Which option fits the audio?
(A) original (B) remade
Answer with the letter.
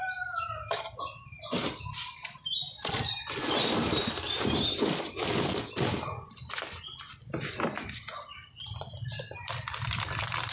B